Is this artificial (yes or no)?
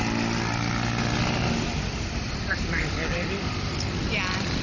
no